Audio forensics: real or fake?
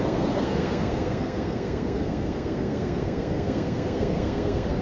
fake